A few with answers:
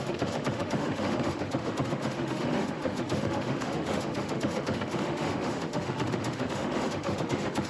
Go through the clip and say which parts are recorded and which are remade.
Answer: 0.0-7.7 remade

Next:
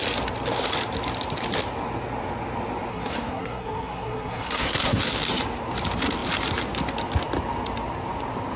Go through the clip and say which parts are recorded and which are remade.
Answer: 0.0-2.9 recorded; 2.9-5.0 remade; 5.0-8.6 recorded

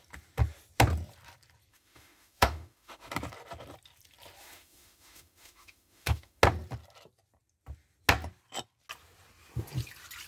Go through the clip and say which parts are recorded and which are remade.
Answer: 0.0-1.7 recorded; 1.7-3.1 remade; 3.1-4.4 recorded; 4.4-6.4 remade; 6.4-10.3 recorded

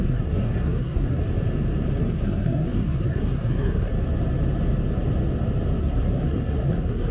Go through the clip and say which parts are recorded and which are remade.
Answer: 0.0-1.2 remade; 1.2-2.0 recorded; 2.0-3.9 remade; 3.9-5.8 recorded; 5.8-7.1 remade

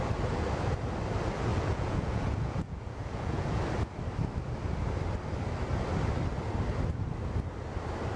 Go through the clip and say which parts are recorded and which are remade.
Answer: 0.0-1.5 recorded; 1.5-3.6 remade; 3.6-8.2 recorded

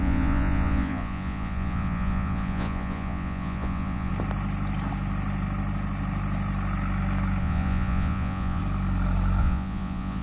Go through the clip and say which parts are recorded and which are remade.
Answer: 0.0-4.1 remade; 4.1-7.4 recorded; 7.4-8.6 remade; 8.6-9.4 recorded; 9.4-10.2 remade

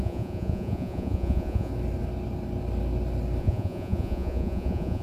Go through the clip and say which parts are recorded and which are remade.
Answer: 0.0-1.7 remade; 1.7-3.4 recorded; 3.4-5.0 remade